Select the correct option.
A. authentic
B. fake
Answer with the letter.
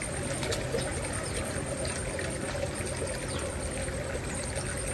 A